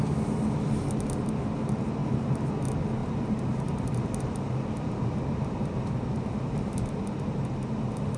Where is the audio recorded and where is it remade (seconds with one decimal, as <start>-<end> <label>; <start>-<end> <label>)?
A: 0.0-2.0 recorded; 2.0-2.6 remade; 2.6-3.0 recorded; 3.0-7.2 remade; 7.2-8.2 recorded